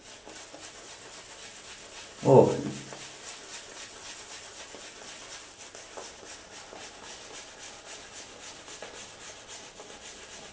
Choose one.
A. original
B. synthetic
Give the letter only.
A